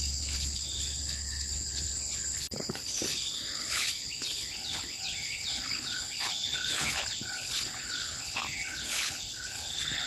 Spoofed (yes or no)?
yes